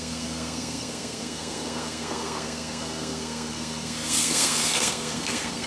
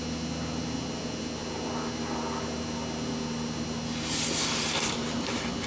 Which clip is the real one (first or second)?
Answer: second